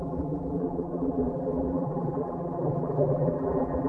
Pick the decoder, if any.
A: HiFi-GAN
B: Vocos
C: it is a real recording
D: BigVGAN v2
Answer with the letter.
D